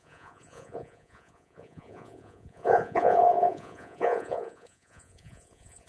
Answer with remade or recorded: remade